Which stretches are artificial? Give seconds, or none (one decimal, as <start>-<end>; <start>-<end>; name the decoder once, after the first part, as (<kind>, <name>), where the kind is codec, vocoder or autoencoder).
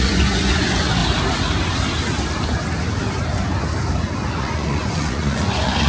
0.0-1.0 (vocoder, Vocos); 4.3-5.9